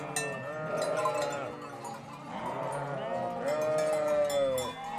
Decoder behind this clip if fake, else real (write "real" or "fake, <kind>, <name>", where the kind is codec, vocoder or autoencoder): real